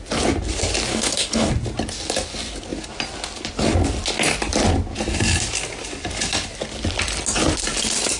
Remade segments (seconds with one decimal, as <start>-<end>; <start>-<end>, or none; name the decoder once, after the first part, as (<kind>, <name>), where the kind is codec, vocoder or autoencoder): 0.9-1.5 (codec, HILCodec)